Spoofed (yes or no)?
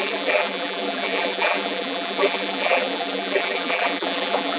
yes